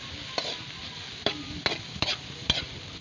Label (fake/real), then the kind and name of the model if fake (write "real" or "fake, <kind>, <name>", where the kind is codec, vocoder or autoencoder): real